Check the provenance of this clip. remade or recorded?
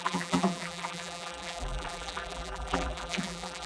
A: remade